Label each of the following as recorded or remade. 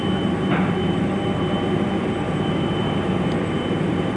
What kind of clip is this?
remade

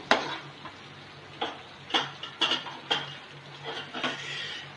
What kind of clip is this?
recorded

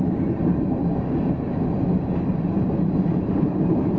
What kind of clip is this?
recorded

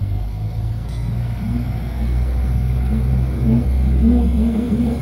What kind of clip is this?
remade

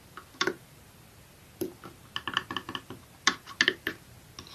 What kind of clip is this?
recorded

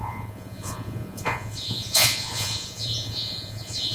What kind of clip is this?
remade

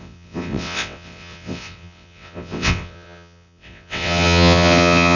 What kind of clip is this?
remade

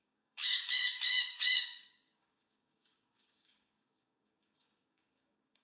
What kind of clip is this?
remade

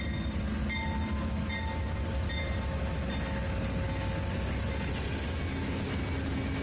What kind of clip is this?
recorded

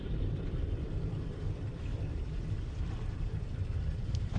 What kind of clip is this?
remade